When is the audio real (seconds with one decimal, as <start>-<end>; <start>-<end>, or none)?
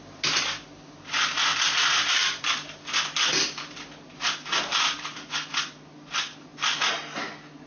0.0-7.7